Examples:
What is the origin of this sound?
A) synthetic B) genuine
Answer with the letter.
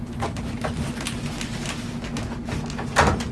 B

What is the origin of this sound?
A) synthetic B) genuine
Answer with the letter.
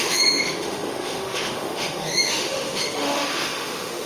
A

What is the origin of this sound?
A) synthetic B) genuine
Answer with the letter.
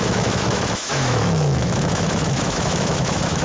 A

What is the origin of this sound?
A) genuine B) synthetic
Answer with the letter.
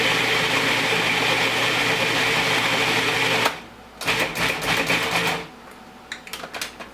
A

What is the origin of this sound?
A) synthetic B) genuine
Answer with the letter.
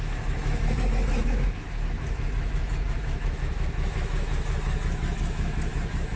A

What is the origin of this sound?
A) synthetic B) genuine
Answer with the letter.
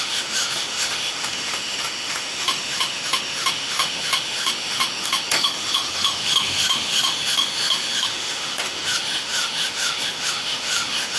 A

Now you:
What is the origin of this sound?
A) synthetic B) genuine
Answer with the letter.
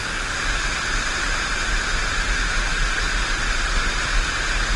B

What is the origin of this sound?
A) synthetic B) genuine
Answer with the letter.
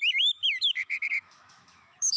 A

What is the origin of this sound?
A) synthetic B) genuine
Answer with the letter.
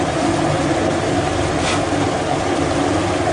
B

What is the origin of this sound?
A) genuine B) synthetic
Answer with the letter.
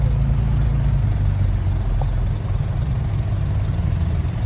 A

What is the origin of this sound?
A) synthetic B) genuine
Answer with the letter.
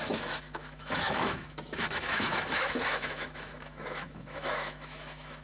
A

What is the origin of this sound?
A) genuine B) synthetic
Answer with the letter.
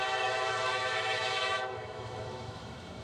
B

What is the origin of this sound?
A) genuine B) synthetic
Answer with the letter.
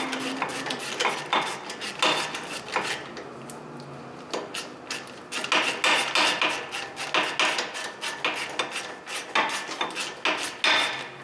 A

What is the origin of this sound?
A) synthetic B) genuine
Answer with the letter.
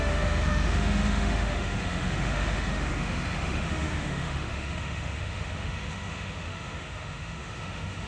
A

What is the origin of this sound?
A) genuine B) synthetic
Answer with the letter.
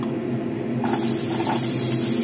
A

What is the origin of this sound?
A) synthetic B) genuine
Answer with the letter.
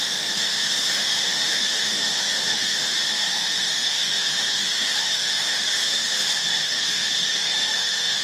A